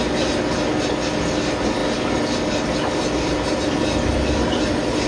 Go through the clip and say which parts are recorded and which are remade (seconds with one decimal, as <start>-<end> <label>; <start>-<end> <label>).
0.0-5.1 recorded